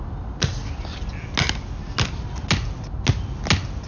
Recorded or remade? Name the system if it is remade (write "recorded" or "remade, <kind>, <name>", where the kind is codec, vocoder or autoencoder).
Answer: recorded